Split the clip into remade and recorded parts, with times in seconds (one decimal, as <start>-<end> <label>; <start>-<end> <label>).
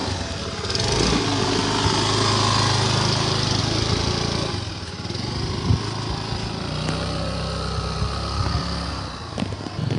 0.0-10.0 recorded